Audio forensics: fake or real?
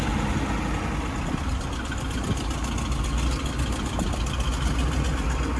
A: real